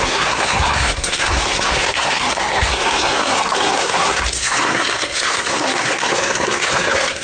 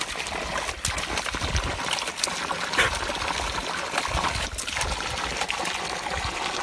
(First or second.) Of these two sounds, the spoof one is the first